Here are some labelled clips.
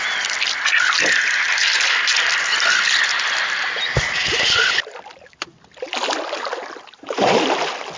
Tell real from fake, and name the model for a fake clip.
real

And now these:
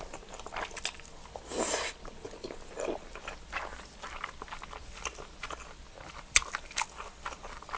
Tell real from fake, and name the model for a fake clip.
real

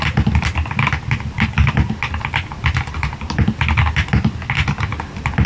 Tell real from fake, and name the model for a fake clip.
real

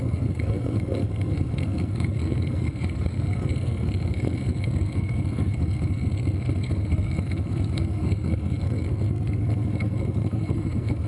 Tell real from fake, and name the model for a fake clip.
fake, codec, SNAC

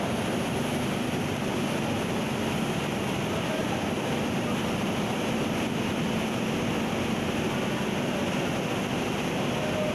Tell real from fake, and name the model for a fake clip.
real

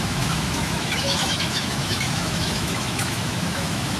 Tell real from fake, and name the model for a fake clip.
fake, autoencoder, DAC-VAE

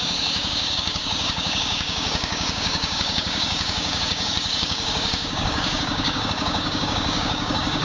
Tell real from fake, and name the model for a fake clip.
fake, codec, DAC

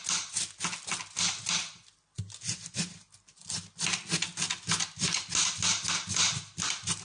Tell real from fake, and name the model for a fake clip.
real